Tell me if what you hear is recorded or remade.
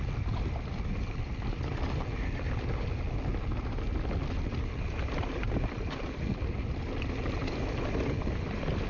recorded